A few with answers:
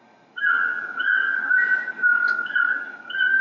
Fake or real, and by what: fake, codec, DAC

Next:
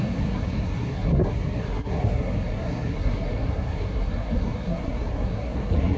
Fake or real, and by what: fake, codec, SNAC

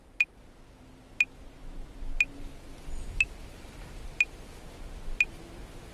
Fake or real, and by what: real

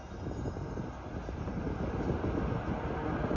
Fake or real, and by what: real